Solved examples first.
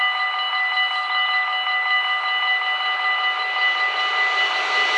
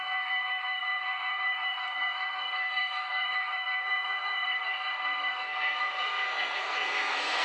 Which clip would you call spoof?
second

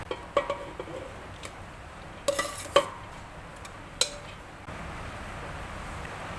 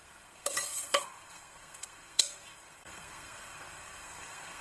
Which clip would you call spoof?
second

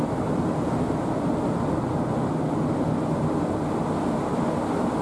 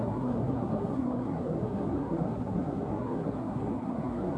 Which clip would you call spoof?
second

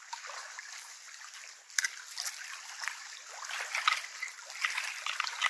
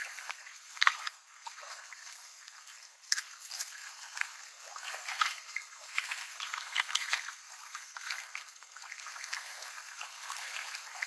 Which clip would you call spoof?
second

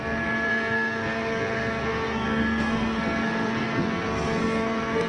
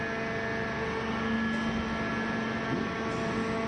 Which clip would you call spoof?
first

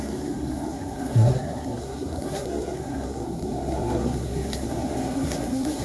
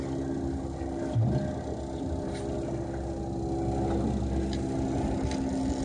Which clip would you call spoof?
first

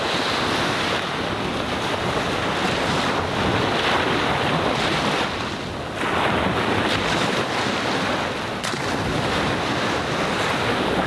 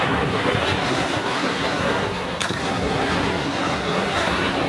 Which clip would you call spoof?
second